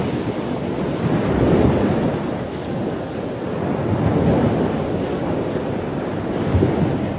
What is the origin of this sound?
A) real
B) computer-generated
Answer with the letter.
A